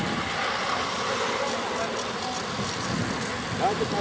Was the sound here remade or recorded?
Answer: recorded